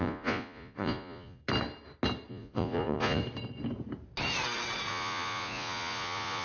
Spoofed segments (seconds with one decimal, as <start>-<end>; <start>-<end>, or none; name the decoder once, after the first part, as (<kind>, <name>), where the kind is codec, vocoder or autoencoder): 0.0-1.4 (vocoder, Vocos); 2.3-3.2; 4.9-6.4